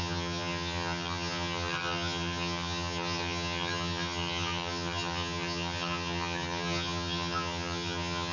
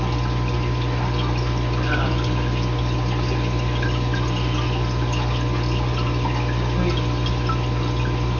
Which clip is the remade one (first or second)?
first